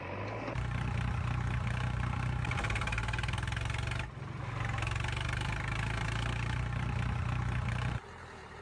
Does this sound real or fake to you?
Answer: real